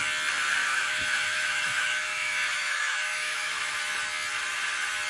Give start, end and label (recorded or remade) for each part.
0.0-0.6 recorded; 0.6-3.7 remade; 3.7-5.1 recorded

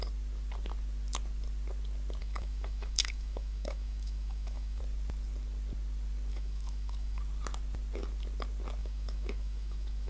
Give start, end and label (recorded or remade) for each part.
0.0-2.2 recorded; 2.2-4.8 remade; 4.8-6.3 recorded; 6.3-7.2 remade; 7.2-8.8 recorded; 8.8-10.1 remade

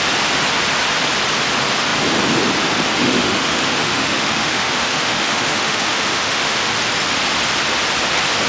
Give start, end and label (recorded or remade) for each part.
0.0-3.0 recorded; 3.0-6.7 remade; 6.7-8.5 recorded